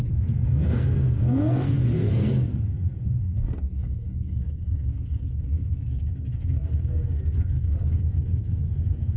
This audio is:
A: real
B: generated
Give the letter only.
B